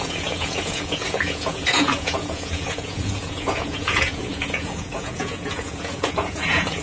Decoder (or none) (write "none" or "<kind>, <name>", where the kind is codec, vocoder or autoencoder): vocoder, Vocos